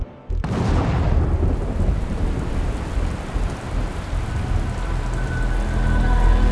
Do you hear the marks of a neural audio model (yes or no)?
no